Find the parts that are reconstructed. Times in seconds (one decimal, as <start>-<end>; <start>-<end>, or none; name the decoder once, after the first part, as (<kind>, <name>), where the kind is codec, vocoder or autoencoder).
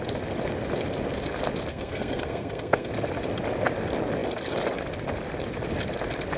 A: 1.7-2.9 (codec, SNAC)